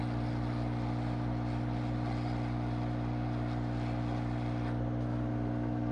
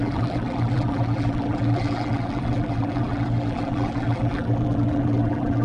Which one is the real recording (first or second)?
first